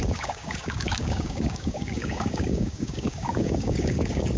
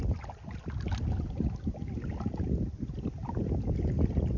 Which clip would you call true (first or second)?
second